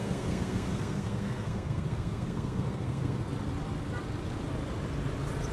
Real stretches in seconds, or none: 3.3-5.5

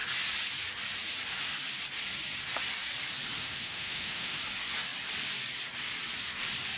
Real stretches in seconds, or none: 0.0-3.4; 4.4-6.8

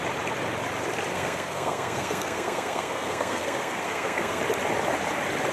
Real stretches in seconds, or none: 0.0-1.1; 4.4-5.5

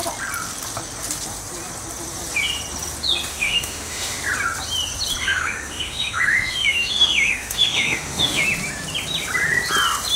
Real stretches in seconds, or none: 0.0-3.3; 4.2-5.2; 8.4-10.2

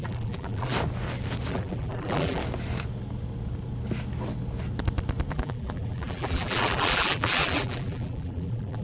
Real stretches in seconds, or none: 0.7-1.5; 2.4-5.3

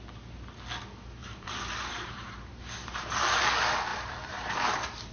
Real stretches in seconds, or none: 0.0-1.2; 3.4-3.9

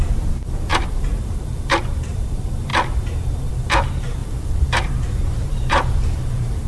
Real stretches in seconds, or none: 2.7-3.5